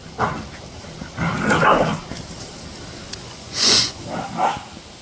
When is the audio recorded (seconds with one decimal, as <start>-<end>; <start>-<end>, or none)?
0.0-3.2; 4.0-5.0